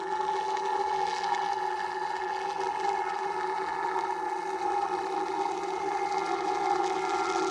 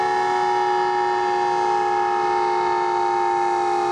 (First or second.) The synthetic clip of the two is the first